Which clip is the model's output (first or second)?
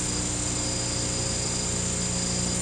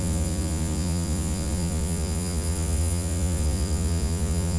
second